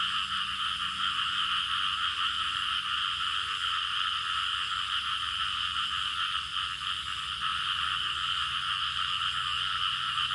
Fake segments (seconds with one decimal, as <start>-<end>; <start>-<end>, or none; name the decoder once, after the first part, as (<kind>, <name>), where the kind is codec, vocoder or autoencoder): none